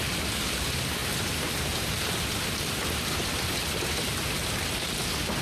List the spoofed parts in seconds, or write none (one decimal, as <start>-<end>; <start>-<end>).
1.0-4.2